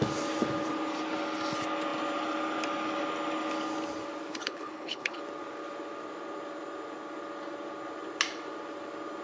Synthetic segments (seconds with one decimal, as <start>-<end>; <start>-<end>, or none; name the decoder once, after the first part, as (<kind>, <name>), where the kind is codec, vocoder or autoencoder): 4.3-5.2 (codec, HILCodec)